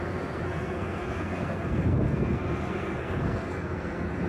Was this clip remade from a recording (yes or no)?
yes